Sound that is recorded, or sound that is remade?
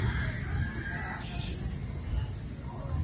recorded